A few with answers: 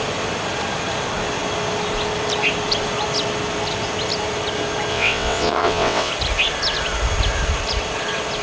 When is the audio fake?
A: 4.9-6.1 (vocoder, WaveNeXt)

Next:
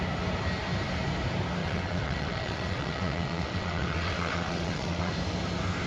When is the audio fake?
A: 1.6-5.1 (vocoder, WaveNeXt)